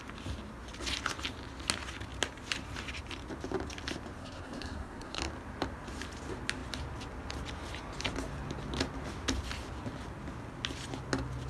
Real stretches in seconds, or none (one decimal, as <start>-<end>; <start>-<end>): 0.0-4.2; 5.2-11.5